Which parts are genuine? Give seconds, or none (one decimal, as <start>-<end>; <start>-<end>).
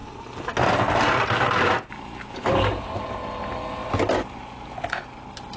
0.0-5.6